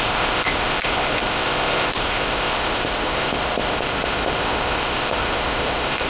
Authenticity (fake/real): fake